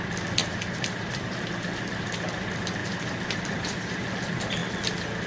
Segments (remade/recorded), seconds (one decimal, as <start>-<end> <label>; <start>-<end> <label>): 0.0-0.4 recorded; 0.4-1.4 remade; 1.4-2.8 recorded; 2.8-4.1 remade; 4.1-5.3 recorded